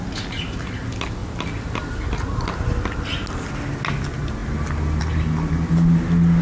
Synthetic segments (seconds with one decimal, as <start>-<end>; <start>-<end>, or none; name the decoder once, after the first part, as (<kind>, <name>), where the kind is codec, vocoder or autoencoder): none